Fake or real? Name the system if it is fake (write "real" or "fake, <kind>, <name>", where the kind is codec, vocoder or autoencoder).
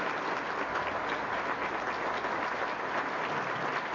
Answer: real